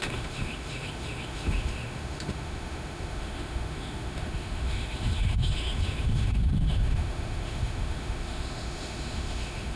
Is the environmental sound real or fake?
fake